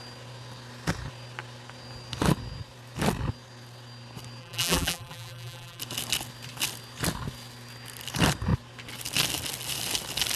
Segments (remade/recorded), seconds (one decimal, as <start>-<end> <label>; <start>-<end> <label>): 0.0-4.4 recorded; 4.4-5.8 remade; 5.8-10.4 recorded